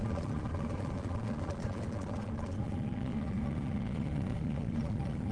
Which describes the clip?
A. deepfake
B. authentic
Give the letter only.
A